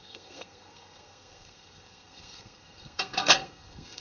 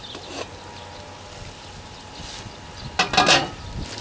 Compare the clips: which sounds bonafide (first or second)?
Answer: second